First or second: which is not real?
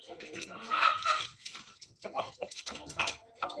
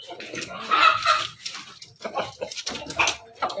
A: first